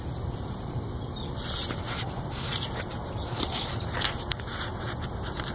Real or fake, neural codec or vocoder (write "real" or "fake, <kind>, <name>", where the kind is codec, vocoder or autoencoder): fake, vocoder, BigVGAN v2